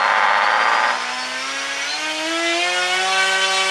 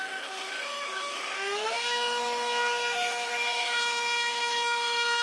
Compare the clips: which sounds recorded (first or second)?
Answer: first